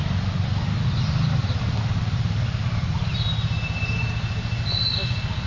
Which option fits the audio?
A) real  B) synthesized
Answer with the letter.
A